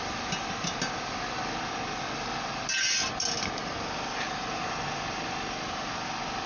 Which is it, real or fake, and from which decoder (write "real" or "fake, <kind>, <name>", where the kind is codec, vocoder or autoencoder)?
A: real